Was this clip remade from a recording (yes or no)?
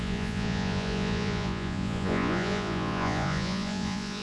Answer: yes